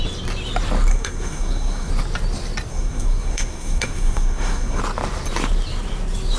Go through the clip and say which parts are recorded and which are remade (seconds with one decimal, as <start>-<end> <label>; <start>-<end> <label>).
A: 0.0-0.9 recorded; 0.9-1.9 remade; 1.9-2.7 recorded; 2.7-4.8 remade; 4.8-6.4 recorded